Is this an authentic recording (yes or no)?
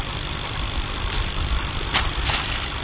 yes